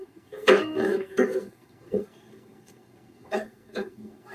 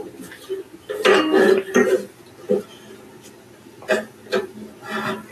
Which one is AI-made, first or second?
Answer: first